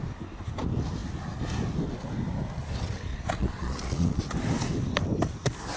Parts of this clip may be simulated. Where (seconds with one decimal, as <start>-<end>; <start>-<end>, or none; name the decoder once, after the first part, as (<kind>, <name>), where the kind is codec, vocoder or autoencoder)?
3.1-4.2 (vocoder, Vocos)